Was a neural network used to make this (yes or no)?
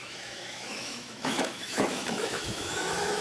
yes